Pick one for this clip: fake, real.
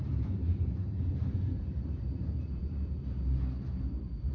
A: fake